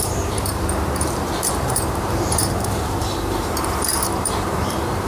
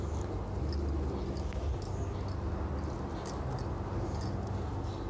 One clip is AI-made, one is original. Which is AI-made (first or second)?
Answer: first